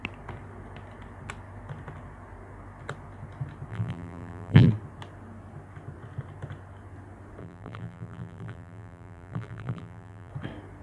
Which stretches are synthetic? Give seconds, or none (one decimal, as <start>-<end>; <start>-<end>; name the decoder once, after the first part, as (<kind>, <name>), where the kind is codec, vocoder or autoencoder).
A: 3.7-4.7 (vocoder, BigVGAN v2); 7.4-10.3